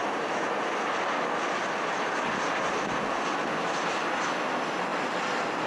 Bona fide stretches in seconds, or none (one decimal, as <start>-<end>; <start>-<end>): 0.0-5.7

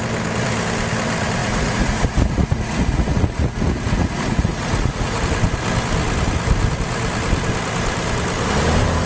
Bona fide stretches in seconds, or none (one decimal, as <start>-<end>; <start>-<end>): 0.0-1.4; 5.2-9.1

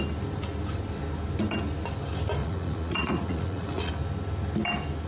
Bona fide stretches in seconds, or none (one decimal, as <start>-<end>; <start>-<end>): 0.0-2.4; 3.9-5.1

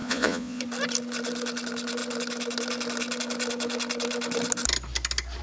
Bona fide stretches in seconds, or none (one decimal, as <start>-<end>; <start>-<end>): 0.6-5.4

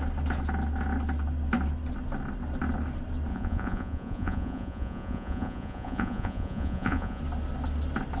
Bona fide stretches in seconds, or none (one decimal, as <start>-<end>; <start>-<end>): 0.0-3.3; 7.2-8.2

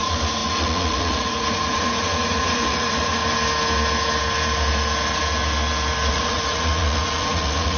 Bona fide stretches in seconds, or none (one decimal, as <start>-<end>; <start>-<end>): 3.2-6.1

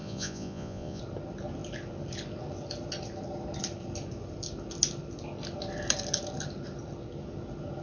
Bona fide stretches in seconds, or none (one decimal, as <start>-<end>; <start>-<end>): 1.0-7.8

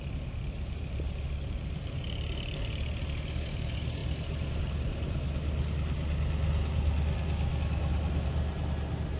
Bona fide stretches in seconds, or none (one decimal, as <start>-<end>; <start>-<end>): 0.0-9.2